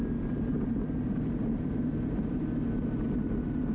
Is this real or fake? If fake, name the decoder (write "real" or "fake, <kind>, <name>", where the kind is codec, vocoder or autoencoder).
real